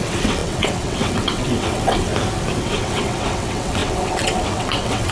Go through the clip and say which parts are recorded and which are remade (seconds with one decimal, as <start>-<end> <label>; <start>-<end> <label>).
0.0-2.1 remade; 2.1-2.6 recorded; 2.6-5.1 remade